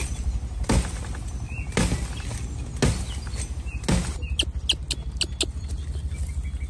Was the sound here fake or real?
real